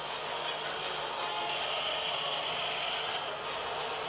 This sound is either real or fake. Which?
real